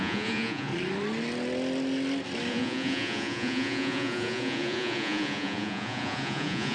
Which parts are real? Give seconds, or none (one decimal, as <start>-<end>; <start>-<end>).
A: 0.7-2.5